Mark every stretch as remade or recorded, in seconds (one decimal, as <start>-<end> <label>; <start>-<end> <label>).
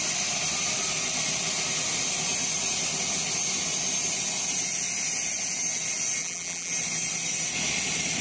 0.0-6.2 recorded; 6.2-6.7 remade; 6.7-8.2 recorded